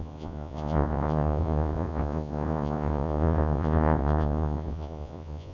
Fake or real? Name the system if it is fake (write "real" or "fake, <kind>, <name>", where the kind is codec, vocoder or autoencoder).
fake, vocoder, Vocos